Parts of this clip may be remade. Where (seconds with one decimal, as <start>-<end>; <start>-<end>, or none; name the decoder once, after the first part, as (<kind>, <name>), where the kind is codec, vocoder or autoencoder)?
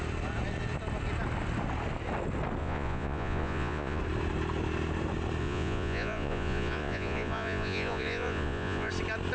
2.6-4.0 (vocoder, Vocos); 5.4-8.9